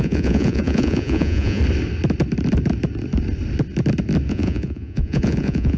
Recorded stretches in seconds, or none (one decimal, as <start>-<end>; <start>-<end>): 1.6-4.3

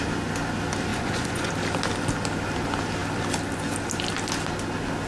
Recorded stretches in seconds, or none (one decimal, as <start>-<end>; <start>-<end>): 0.0-0.9; 1.5-5.1

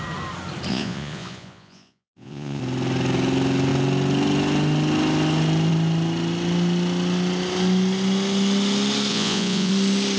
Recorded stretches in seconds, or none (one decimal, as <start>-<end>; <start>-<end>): 0.0-0.7; 2.6-9.1; 9.7-10.2

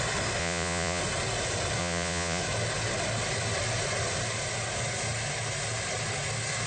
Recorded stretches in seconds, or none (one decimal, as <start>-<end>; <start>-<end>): 0.0-0.4; 1.0-1.8; 2.4-6.7

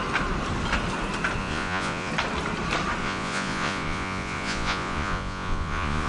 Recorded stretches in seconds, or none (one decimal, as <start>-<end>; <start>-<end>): 0.0-1.4; 2.1-3.0

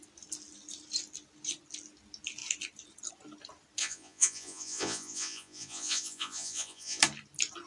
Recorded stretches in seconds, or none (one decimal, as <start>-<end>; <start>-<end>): 0.0-3.8; 7.0-7.7

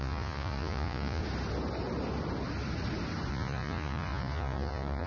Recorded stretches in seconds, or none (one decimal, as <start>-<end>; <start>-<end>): 1.2-3.3

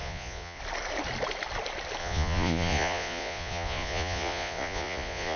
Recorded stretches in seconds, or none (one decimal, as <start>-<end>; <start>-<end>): 0.6-2.0